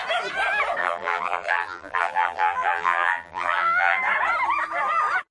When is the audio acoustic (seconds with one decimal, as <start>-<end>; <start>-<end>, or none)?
0.0-0.8; 4.0-5.3